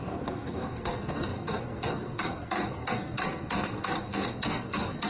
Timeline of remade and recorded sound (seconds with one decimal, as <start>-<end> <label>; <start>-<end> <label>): 0.0-5.1 remade